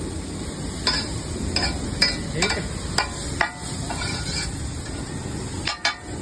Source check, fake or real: real